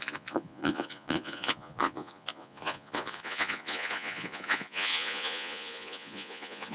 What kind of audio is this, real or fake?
fake